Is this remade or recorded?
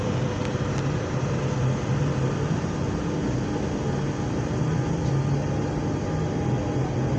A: recorded